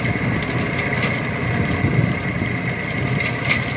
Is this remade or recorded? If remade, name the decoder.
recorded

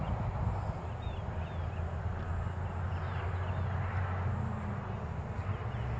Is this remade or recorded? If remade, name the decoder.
recorded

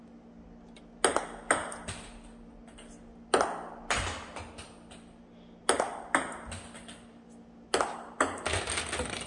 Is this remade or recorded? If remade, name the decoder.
recorded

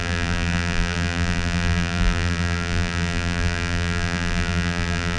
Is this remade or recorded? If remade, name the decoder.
remade, vocoder, BigVGAN v2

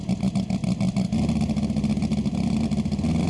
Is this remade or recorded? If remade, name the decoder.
recorded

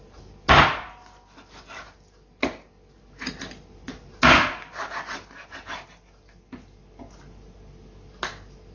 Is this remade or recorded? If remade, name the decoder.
recorded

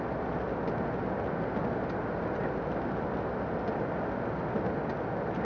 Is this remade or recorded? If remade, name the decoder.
recorded